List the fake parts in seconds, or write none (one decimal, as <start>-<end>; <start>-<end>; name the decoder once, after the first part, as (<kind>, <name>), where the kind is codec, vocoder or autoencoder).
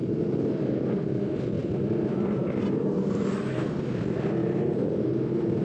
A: 0.0-0.6 (vocoder, BigVGAN v2); 4.4-5.0